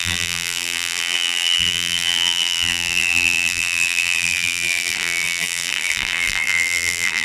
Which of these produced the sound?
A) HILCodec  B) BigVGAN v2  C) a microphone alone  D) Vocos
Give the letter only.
B